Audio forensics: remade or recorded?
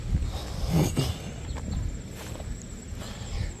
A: recorded